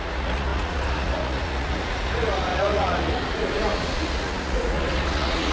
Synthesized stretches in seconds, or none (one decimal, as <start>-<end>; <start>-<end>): 0.0-5.5